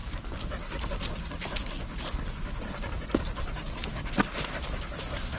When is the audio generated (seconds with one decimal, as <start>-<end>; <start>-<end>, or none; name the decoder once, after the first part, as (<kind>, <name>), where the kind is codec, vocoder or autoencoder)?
none